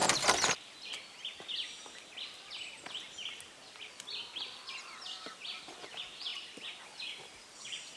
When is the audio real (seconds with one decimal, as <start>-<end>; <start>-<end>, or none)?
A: 0.0-8.0